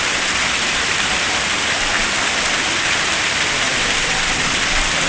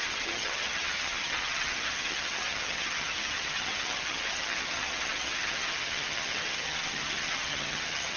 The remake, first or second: second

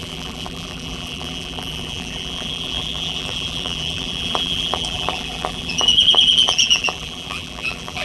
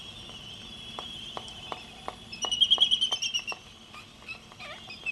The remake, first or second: first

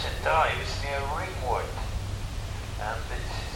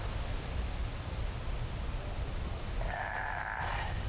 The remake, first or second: second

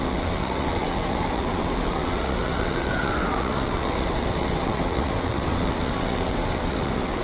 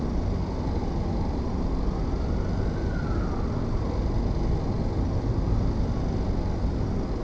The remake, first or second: first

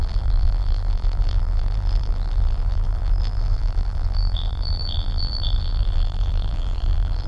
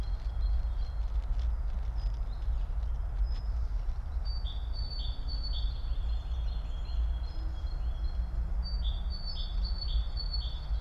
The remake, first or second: first